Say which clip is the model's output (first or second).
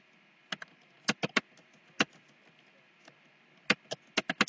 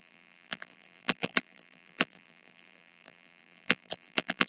second